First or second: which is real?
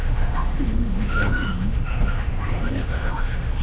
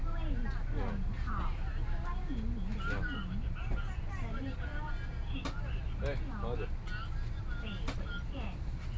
second